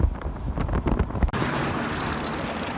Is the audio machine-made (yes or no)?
no